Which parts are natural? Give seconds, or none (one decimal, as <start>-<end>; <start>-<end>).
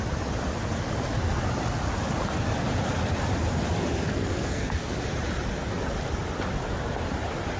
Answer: 0.0-4.1; 5.0-7.6